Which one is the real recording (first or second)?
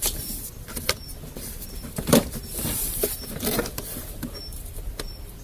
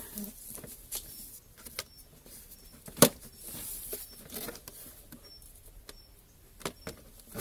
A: second